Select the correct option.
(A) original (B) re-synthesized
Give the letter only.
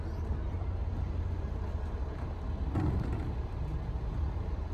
A